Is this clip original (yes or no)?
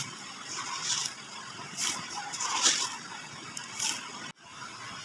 yes